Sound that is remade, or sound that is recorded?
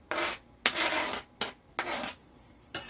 recorded